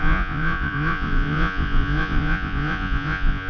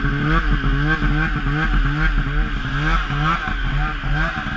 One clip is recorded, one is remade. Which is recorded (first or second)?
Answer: second